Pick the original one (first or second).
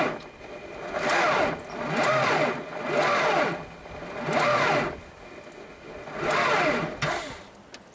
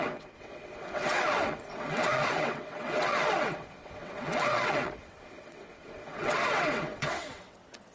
first